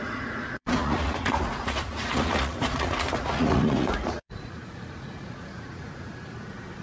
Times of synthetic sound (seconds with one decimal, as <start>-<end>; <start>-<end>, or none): 0.0-6.1